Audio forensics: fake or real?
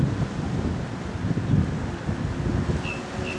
real